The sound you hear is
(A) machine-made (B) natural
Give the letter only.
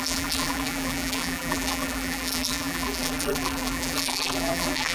A